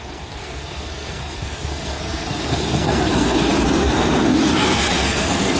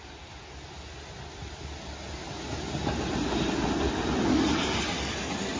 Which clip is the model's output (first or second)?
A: first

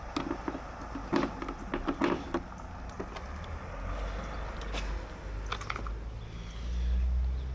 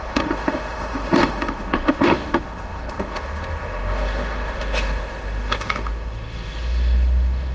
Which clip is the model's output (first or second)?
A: second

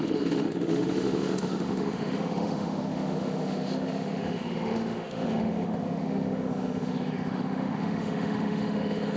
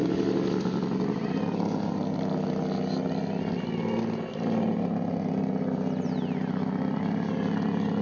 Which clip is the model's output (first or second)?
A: first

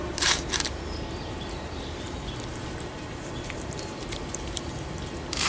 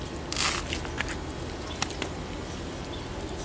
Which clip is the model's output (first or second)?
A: first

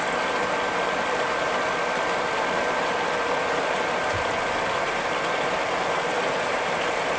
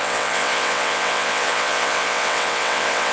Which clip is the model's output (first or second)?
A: second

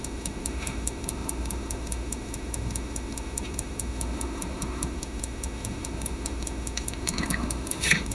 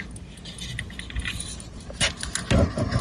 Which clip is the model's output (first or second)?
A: first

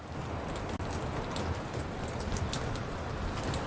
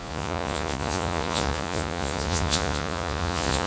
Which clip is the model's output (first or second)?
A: second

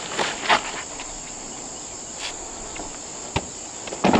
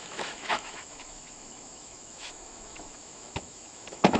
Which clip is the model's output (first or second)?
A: second